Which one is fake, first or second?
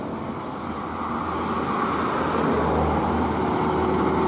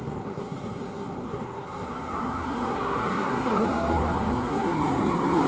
second